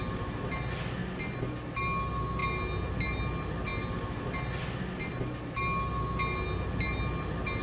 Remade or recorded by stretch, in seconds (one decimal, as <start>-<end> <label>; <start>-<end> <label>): 0.0-7.6 recorded